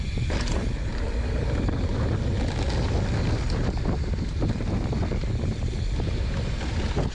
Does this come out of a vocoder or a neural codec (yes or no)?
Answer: no